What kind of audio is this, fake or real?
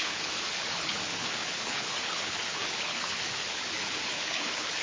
fake